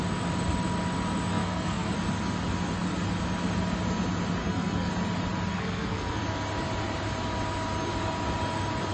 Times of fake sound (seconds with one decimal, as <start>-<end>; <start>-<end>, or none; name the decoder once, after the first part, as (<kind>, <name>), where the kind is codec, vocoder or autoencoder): 1.3-1.9 (codec, SNAC); 4.4-4.9; 5.5-6.2